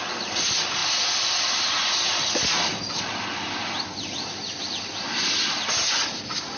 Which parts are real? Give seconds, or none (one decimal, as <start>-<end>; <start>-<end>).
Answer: 0.0-6.6